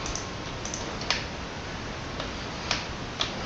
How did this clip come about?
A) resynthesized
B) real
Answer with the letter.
B